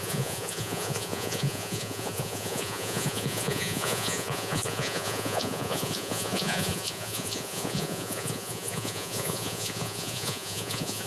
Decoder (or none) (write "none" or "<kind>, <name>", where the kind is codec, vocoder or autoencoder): vocoder, Vocos